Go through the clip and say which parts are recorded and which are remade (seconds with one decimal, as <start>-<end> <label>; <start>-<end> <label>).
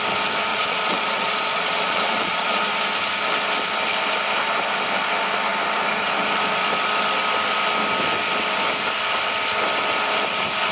0.0-0.5 recorded; 0.5-2.6 remade; 2.6-10.7 recorded